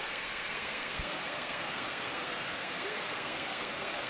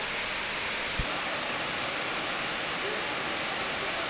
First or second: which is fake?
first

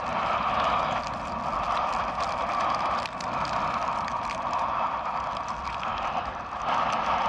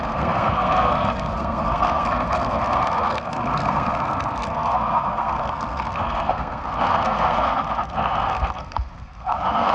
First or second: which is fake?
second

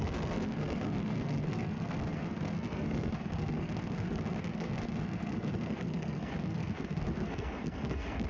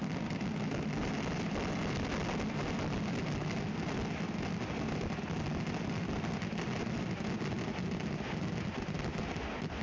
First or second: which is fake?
first